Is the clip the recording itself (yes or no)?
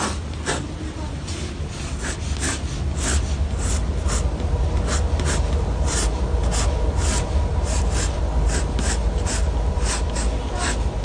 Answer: yes